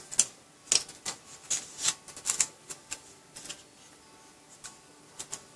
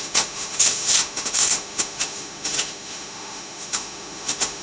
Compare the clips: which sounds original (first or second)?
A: first